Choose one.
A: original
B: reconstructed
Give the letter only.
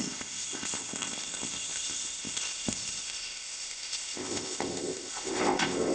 B